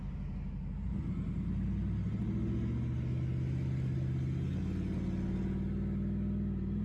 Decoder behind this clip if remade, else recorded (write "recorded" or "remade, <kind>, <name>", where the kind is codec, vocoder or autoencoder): recorded